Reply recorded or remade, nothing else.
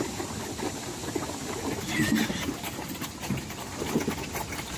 recorded